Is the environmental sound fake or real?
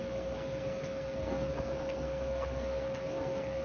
fake